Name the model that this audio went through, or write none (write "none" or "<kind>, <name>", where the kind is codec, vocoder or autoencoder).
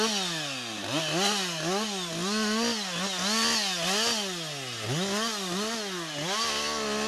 none